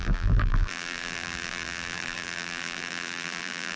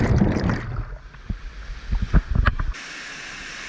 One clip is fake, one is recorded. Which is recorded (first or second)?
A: second